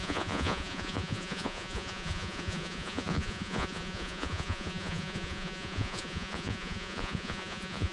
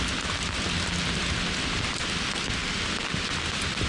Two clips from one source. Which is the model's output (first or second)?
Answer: first